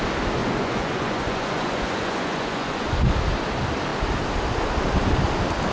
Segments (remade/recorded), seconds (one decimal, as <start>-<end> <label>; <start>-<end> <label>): 0.0-0.4 recorded; 0.4-3.1 remade; 3.1-5.7 recorded